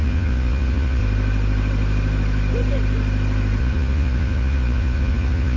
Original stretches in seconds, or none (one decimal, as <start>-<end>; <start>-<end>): 1.0-3.6